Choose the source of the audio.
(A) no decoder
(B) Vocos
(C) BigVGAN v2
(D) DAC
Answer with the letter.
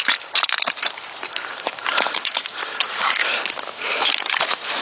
C